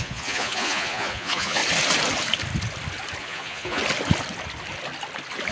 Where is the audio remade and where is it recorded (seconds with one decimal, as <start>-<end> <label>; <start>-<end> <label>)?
0.0-1.6 remade; 1.6-3.2 recorded; 3.2-3.8 remade; 3.8-5.5 recorded